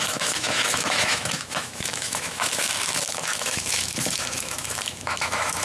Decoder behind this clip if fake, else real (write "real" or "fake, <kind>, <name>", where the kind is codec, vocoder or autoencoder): fake, autoencoder, DAC-VAE